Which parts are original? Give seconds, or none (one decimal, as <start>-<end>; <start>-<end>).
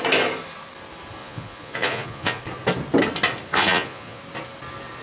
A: 0.0-1.2; 2.4-3.5; 4.2-5.0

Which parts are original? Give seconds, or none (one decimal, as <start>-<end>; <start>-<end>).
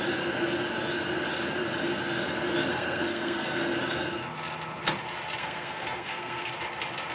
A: 0.0-2.7; 3.6-5.4; 6.5-7.1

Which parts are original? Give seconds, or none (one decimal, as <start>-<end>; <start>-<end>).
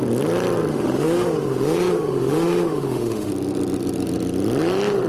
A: 0.0-0.7; 3.3-5.1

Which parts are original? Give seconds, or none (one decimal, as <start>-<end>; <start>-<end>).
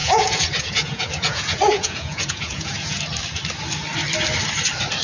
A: 3.0-5.0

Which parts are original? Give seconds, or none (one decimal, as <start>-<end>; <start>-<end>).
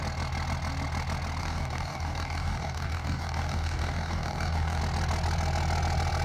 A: 0.0-1.4; 4.8-6.2